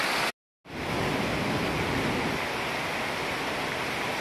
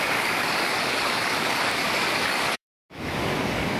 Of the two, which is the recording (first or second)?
first